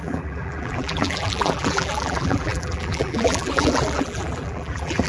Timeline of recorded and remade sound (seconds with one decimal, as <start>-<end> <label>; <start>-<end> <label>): 0.0-5.1 remade